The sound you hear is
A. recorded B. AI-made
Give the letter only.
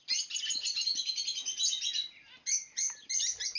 A